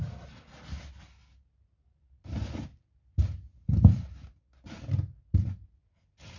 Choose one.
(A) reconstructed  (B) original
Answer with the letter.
B